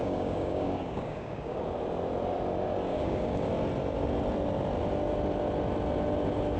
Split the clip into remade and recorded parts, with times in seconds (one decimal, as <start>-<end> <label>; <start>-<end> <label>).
0.0-1.6 remade; 1.6-2.9 recorded; 2.9-3.5 remade; 3.5-6.6 recorded